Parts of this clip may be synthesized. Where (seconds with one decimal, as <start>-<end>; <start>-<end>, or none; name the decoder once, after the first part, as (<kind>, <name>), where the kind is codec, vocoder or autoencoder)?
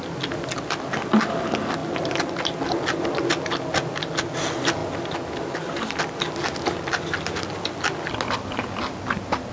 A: none